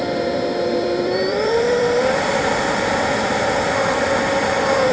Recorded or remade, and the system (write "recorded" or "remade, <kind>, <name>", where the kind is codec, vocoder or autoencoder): remade, vocoder, BigVGAN v2